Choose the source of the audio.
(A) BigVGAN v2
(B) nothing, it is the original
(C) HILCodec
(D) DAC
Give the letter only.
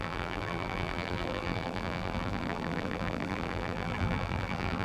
A